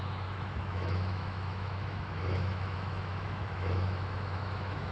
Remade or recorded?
remade